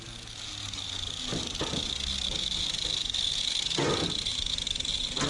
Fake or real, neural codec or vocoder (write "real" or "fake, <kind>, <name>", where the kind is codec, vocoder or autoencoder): real